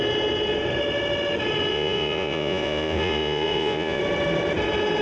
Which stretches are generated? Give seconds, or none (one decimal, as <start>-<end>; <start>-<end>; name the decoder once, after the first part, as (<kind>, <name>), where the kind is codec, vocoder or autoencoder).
1.7-4.0 (vocoder, Vocos)